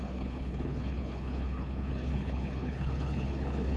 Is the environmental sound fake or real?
fake